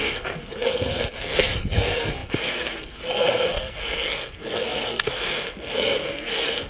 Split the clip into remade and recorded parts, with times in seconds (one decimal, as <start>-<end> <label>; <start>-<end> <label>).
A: 0.0-6.7 remade